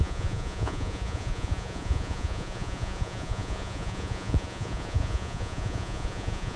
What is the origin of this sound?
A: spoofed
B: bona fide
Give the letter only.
A